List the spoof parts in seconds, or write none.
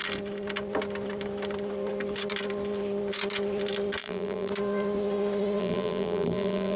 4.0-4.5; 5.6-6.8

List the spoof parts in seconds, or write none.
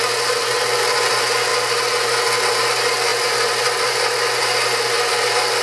none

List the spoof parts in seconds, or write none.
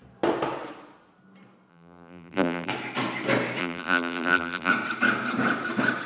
1.7-2.7; 3.6-4.7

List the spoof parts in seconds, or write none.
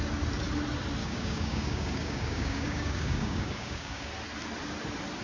1.0-4.1